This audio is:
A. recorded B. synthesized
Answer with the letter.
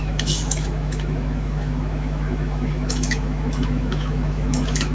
B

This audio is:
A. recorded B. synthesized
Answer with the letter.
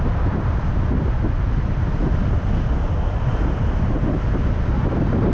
A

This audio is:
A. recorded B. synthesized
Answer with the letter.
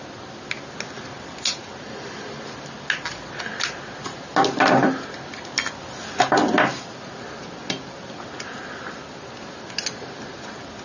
A